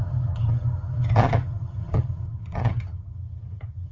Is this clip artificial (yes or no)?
yes